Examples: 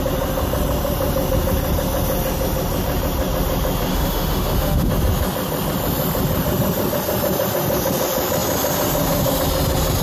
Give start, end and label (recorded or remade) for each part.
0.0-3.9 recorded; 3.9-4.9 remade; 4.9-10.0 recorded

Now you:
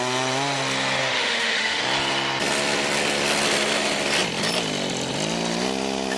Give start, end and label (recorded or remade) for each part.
0.0-1.0 recorded; 1.0-1.8 remade; 1.8-6.2 recorded

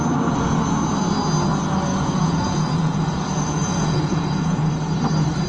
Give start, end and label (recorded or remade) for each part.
0.0-1.9 recorded; 1.9-4.7 remade; 4.7-5.5 recorded

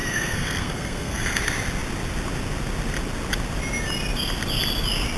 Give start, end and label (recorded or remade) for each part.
0.0-1.4 remade; 1.4-5.2 recorded

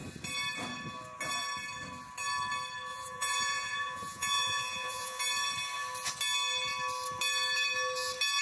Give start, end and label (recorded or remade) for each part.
0.0-2.9 recorded; 2.9-5.2 remade; 5.2-8.4 recorded